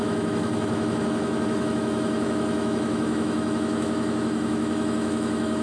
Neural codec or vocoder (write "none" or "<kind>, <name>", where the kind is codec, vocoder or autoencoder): autoencoder, DAC-VAE